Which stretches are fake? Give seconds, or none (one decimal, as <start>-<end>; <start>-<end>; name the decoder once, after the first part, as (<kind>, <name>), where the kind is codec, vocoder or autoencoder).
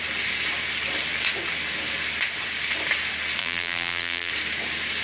3.4-4.3 (vocoder, BigVGAN v2)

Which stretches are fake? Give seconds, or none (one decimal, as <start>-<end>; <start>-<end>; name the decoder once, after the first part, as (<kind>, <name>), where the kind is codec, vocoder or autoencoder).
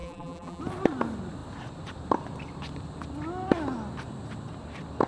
0.0-0.6 (vocoder, BigVGAN v2)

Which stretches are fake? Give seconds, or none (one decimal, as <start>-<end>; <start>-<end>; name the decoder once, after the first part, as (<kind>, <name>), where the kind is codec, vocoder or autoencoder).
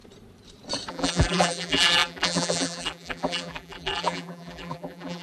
0.9-5.2 (vocoder, BigVGAN v2)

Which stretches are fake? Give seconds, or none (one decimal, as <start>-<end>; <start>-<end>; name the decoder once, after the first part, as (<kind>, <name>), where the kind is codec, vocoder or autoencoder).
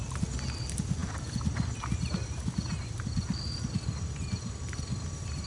none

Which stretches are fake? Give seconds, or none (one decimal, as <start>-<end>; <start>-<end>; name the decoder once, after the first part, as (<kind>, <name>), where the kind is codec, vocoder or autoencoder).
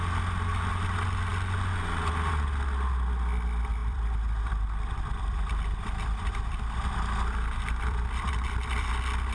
3.8-8.9 (vocoder, BigVGAN v2)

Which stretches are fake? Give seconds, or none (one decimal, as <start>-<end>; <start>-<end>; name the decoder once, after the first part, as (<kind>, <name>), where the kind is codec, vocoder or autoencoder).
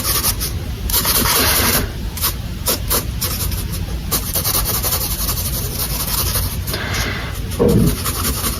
0.0-5.8 (vocoder, BigVGAN v2); 6.5-8.6